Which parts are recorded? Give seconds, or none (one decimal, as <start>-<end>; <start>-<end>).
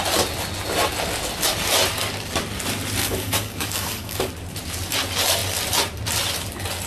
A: 0.0-3.0; 4.3-6.9